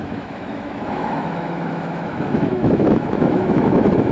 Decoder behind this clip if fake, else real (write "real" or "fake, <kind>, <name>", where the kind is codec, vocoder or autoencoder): fake, autoencoder, DAC-VAE